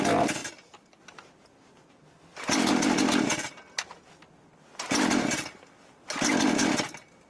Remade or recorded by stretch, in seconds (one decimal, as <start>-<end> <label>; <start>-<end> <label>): 0.0-0.4 recorded; 0.4-1.0 remade; 1.0-7.3 recorded